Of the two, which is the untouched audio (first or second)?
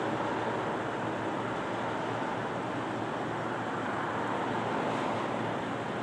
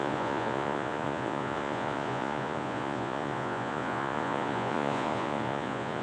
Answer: first